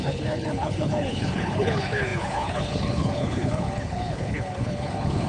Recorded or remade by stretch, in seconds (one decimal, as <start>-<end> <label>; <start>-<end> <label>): 0.0-5.3 remade